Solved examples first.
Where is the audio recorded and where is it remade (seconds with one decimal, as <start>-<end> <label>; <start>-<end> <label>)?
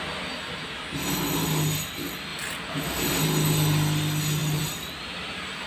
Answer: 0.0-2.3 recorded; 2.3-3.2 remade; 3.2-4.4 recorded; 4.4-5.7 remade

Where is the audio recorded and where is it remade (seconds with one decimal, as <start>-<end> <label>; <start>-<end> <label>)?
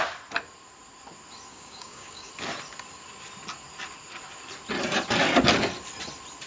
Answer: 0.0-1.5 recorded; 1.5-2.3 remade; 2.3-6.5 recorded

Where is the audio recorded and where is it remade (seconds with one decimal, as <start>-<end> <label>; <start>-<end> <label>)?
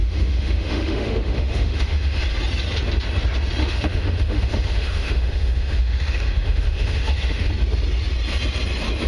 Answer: 0.0-2.2 remade; 2.2-3.6 recorded; 3.6-7.5 remade; 7.5-9.1 recorded